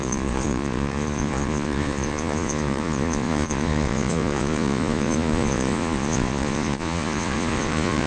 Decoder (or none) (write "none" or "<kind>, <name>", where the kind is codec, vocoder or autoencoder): vocoder, Vocos